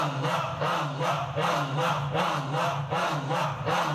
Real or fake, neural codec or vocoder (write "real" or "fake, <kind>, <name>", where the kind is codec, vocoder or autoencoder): real